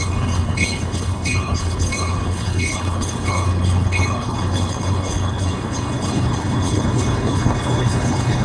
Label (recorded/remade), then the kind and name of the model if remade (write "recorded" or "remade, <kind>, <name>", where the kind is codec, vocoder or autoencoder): remade, codec, HILCodec